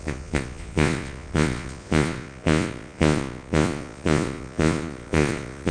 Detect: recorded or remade remade